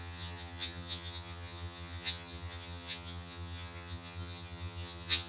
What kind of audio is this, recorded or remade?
remade